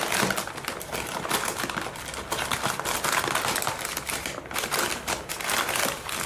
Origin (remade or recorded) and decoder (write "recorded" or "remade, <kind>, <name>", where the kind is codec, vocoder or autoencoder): recorded